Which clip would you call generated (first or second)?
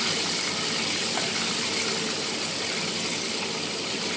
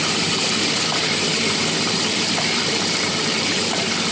second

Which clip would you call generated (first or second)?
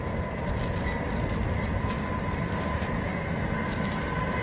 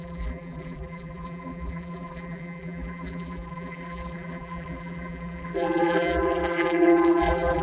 second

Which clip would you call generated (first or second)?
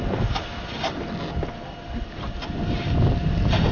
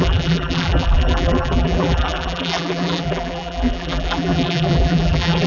second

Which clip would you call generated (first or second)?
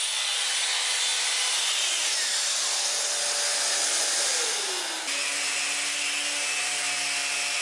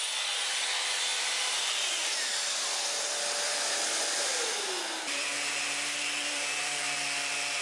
second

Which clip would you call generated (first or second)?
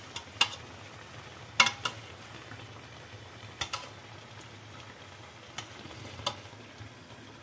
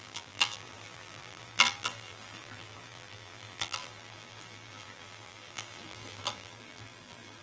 second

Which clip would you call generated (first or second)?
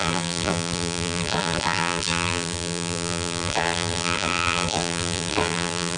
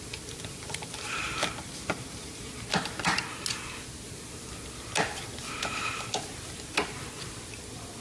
first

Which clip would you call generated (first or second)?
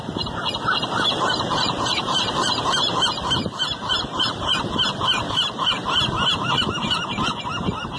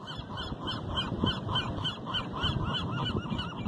first